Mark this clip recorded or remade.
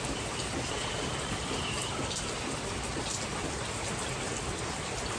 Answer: recorded